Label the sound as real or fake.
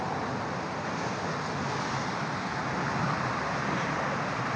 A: fake